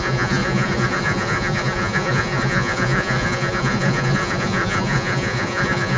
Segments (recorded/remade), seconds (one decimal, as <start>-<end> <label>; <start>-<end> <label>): 0.0-6.0 remade